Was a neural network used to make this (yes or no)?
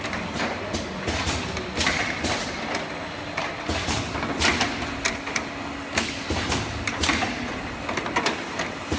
no